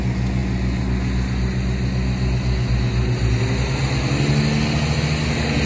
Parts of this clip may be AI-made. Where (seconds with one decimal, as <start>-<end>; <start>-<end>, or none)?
none